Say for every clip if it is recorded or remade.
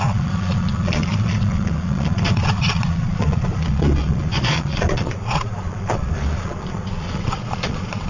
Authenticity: remade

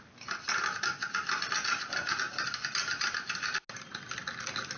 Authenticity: recorded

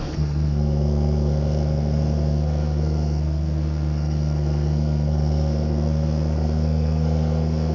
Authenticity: remade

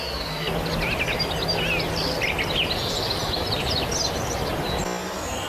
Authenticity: recorded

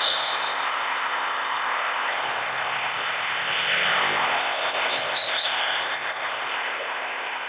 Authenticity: remade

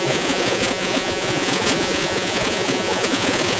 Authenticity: remade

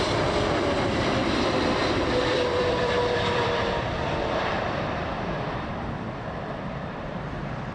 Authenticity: remade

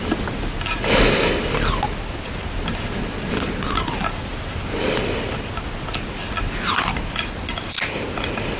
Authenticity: recorded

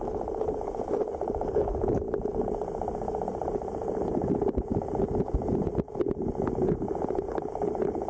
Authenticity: recorded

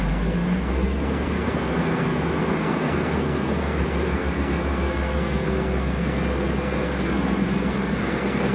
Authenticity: remade